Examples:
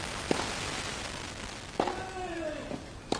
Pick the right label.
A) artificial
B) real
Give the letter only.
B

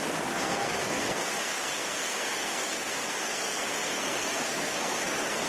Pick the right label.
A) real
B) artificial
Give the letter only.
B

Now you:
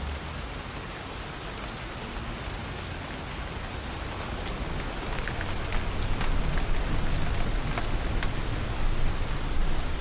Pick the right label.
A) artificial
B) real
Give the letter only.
B